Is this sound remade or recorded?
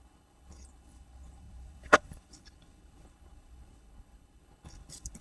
remade